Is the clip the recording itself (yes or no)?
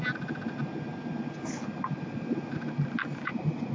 yes